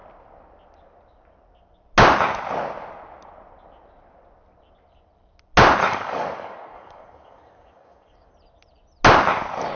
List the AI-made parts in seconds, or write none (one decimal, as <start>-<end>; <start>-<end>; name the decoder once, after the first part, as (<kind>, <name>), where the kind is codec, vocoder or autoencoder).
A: 5.8-8.3 (codec, DAC)